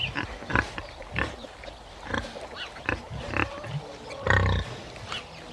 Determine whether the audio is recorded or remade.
recorded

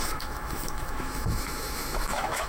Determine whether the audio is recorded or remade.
remade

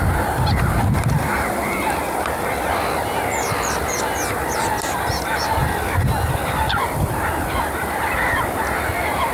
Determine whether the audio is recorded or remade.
remade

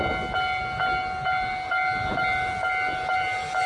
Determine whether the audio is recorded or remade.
recorded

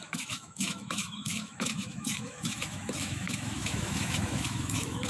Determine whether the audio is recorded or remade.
remade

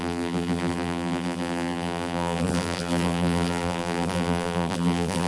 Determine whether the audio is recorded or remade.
remade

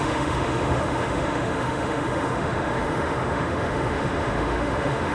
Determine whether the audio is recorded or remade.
remade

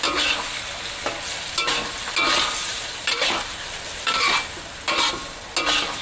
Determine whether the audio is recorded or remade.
recorded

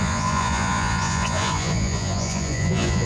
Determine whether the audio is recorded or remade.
remade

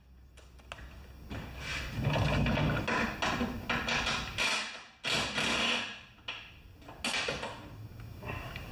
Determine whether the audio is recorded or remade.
recorded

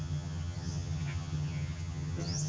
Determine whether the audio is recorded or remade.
remade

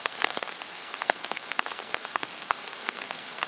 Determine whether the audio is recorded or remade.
remade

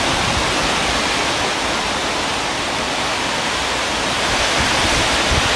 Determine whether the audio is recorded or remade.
recorded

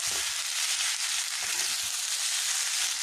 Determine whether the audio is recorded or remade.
recorded